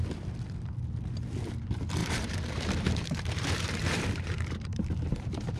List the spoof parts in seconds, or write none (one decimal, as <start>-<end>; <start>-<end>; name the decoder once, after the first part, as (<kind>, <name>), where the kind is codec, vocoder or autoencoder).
2.0-5.6 (vocoder, BigVGAN v2)